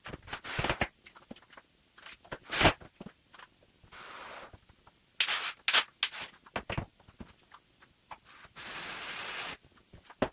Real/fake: real